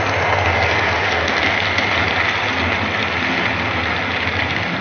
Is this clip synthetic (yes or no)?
no